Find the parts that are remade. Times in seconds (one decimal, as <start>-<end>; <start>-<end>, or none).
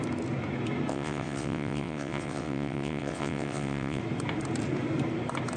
0.9-4.0